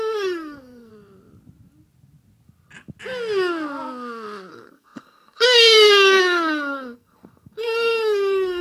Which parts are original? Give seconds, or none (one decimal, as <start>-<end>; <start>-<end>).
0.9-4.5